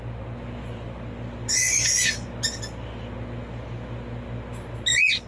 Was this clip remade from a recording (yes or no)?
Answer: no